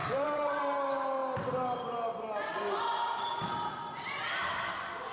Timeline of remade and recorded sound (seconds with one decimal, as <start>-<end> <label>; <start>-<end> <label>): 0.0-0.6 remade; 0.6-5.1 recorded